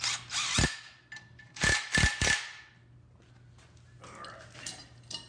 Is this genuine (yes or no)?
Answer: yes